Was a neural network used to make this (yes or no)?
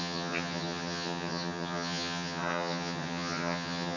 yes